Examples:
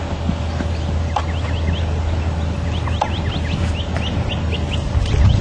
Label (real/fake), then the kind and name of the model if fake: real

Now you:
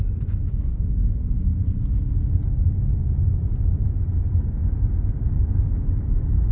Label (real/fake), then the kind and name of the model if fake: real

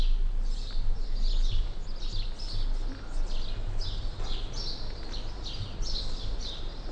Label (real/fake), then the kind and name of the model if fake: real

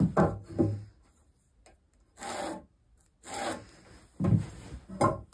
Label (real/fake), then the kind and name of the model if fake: real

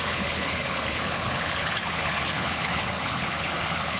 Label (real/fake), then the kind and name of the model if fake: fake, codec, HILCodec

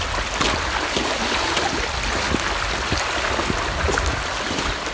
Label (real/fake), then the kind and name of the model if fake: real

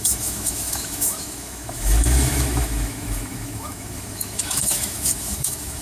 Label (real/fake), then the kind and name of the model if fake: fake, autoencoder, DAC-VAE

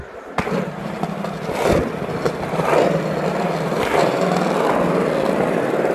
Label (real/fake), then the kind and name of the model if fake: real